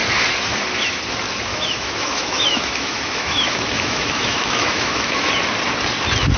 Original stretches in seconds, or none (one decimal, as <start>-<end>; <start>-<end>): 0.0-1.5; 5.3-6.4